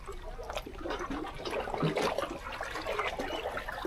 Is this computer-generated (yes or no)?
no